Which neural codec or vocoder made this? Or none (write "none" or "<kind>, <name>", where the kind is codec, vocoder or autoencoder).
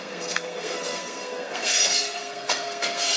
codec, SNAC